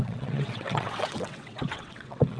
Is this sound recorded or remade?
remade